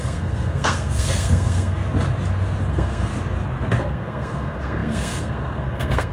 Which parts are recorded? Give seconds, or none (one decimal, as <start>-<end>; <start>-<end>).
1.8-2.7; 3.1-3.8